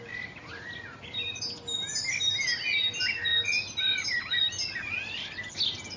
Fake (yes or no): no